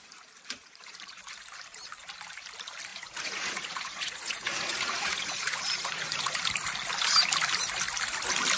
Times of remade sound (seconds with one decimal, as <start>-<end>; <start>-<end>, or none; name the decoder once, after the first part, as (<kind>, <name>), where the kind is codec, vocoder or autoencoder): 0.6-1.2 (vocoder, Vocos); 2.9-6.4